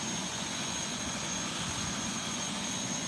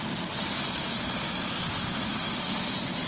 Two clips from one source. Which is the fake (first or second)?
first